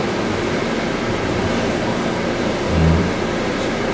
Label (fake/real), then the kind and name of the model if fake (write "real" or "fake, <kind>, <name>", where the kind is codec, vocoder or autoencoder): real